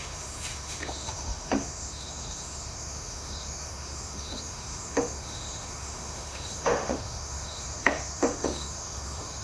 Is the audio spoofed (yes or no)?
yes